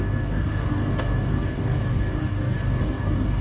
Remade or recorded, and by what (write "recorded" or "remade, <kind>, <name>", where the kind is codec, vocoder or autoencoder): remade, codec, DAC